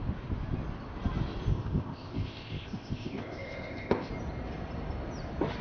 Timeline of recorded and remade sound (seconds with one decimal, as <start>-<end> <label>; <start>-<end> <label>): 0.0-1.5 recorded; 1.5-4.1 remade; 4.1-5.6 recorded